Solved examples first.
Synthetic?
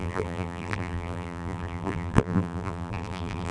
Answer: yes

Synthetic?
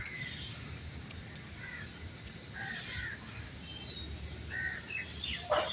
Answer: no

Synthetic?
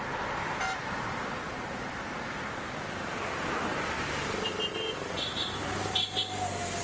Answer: no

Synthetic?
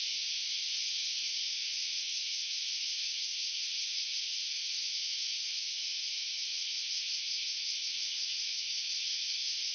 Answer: yes